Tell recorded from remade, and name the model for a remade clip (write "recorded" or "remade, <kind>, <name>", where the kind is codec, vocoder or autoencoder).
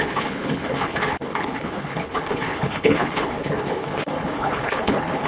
remade, codec, HILCodec